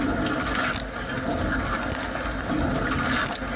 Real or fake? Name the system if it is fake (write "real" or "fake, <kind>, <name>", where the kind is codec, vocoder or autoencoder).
real